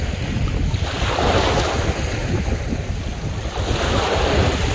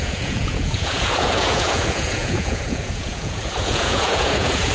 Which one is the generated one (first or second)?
second